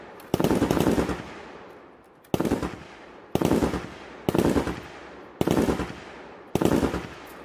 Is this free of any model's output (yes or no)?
yes